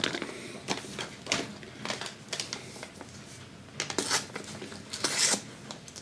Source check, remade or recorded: recorded